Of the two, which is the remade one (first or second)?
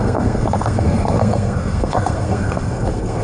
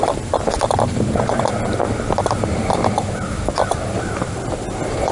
first